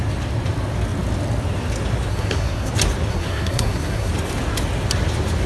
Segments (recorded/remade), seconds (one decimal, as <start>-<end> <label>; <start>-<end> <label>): 0.0-2.1 recorded; 2.1-2.7 remade; 2.7-3.1 recorded; 3.1-4.1 remade; 4.1-5.5 recorded